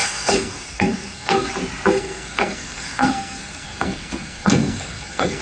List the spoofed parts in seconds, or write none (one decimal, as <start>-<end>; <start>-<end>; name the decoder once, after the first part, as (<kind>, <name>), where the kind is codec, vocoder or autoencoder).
0.0-1.5 (codec, SNAC); 1.9-5.4